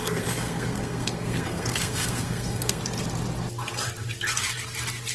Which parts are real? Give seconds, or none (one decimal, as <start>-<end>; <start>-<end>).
2.8-5.1